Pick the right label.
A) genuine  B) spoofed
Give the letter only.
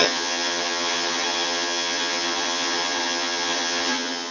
B